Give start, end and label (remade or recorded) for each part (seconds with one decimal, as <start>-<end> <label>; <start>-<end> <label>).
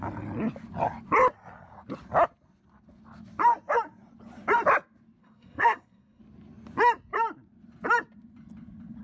0.0-5.2 recorded; 5.2-6.2 remade; 6.2-9.0 recorded